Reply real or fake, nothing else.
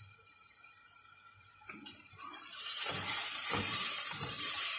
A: fake